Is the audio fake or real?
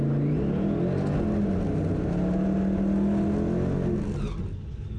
real